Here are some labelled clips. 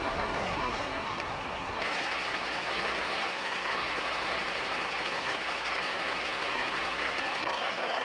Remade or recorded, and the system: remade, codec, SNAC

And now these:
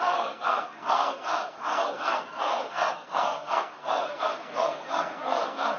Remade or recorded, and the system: remade, codec, SNAC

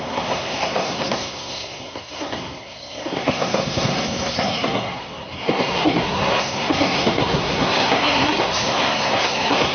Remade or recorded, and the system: remade, codec, SNAC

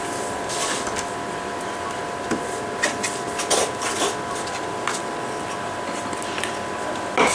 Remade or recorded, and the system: recorded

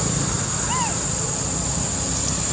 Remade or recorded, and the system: recorded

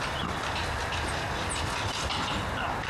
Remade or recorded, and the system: recorded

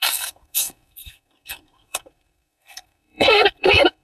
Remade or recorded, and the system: remade, codec, SNAC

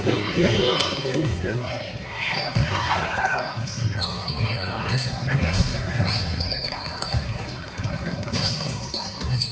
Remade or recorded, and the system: remade, codec, SNAC